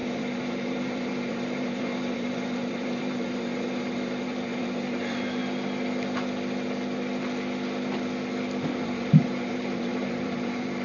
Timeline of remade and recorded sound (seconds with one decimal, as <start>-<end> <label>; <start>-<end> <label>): 0.0-5.4 remade; 5.4-8.8 recorded; 8.8-10.8 remade